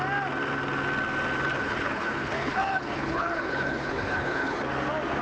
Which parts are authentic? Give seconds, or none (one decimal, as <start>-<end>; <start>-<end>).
0.0-1.5; 4.6-5.2